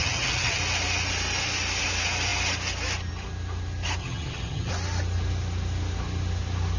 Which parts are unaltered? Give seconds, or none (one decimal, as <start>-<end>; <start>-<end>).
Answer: 0.6-4.0; 4.7-6.8